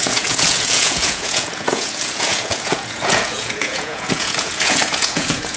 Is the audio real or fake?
fake